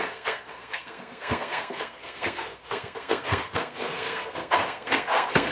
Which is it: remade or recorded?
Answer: remade